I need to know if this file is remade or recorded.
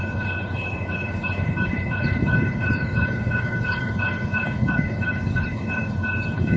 remade